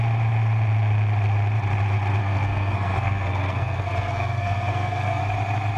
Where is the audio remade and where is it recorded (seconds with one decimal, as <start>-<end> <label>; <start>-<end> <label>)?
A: 0.0-2.2 recorded; 2.2-5.2 remade; 5.2-5.8 recorded